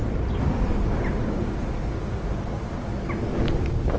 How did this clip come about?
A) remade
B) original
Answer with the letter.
B